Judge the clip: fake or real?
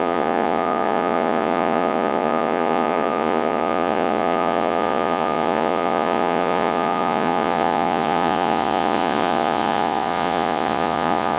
fake